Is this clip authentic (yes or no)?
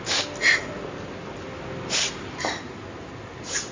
yes